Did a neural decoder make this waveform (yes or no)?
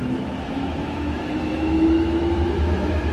yes